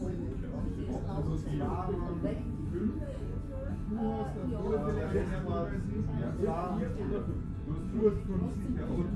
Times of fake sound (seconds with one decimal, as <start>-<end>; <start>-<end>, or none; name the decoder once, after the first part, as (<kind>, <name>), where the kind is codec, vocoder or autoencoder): 6.8-9.2 (vocoder, Vocos)